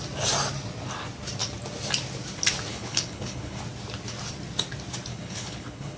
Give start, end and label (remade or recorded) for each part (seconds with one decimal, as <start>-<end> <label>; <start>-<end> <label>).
0.0-2.7 recorded; 2.7-3.6 remade; 3.6-5.1 recorded; 5.1-6.0 remade